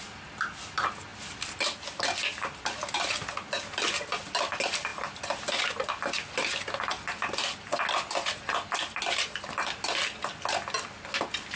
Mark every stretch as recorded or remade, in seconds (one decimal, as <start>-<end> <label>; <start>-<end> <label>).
0.0-11.6 recorded